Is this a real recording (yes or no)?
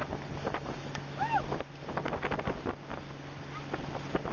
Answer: yes